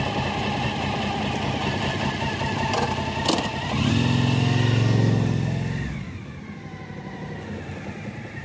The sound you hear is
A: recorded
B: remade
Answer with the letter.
A